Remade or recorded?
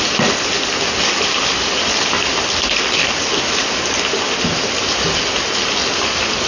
recorded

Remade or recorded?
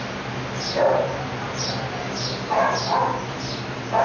recorded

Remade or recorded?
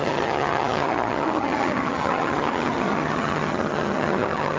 remade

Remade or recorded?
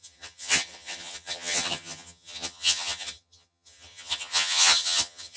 remade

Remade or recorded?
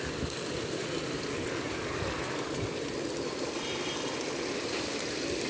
recorded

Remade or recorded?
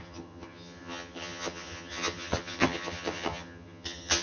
remade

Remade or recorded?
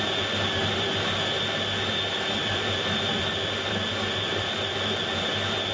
recorded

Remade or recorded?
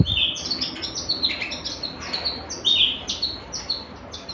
recorded